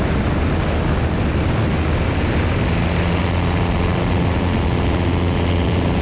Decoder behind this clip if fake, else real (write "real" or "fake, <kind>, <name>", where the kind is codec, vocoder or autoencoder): real